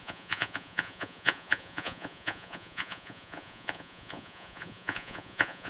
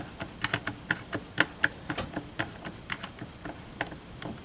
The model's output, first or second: first